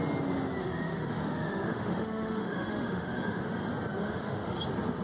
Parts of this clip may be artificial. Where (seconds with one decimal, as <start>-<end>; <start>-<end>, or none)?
0.6-3.6; 4.0-4.6